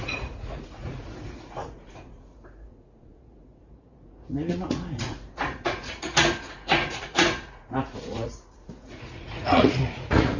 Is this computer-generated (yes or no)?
yes